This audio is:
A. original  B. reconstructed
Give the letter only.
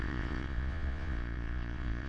B